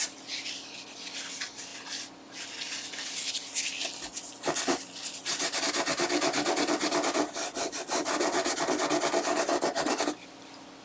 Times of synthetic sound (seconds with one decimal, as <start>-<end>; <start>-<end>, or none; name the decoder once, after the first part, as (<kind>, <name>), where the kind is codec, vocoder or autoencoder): none